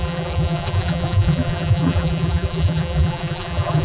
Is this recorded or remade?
remade